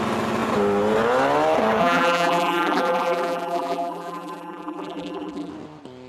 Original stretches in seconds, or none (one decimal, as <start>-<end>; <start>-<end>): 0.0-1.8; 5.5-6.1